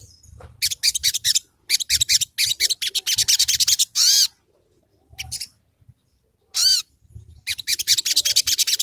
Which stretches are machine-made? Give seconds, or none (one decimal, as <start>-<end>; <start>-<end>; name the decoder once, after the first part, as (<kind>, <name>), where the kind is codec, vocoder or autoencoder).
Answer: none